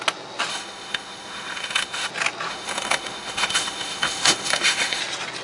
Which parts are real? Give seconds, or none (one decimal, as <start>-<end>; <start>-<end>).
0.0-0.5; 2.1-2.5; 5.0-5.4